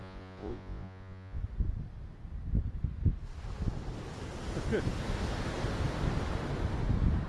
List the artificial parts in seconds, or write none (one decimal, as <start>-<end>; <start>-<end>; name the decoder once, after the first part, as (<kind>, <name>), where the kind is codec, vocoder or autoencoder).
0.0-1.4 (vocoder, Vocos)